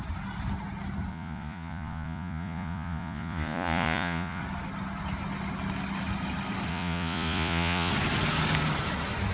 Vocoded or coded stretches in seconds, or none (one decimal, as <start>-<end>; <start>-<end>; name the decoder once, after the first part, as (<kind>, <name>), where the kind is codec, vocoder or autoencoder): 1.1-4.4 (vocoder, Vocos); 6.7-7.9